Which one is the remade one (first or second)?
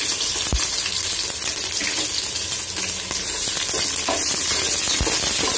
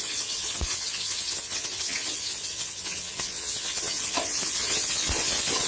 second